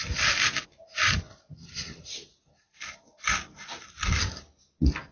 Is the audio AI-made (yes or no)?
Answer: no